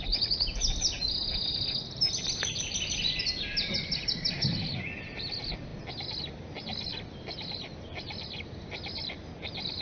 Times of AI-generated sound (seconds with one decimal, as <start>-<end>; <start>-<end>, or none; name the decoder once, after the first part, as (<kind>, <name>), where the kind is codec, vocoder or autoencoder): none

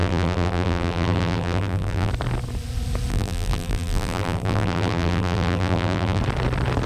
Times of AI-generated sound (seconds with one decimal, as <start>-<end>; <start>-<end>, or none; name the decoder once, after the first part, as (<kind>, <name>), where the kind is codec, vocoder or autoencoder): 0.0-2.1 (vocoder, BigVGAN v2); 3.1-6.2

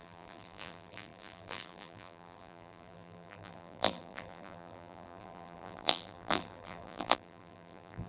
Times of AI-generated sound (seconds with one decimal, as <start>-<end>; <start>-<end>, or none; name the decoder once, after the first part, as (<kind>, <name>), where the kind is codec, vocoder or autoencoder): 0.0-8.1 (vocoder, BigVGAN v2)

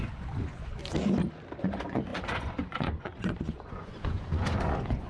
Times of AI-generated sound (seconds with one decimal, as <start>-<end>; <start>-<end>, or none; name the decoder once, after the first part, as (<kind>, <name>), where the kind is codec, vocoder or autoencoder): 0.0-0.8 (vocoder, Vocos); 1.6-5.1